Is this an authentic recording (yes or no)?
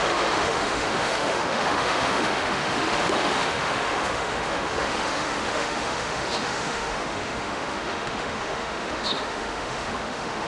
no